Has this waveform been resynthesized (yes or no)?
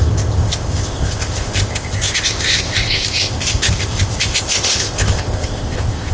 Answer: yes